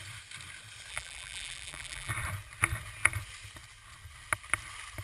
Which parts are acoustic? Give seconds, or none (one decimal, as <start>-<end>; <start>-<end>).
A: 0.0-0.9; 2.1-5.0